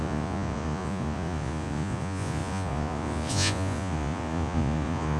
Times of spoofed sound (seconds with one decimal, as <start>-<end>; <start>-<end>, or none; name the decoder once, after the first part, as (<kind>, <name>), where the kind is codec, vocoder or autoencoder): 0.0-5.2 (vocoder, Vocos)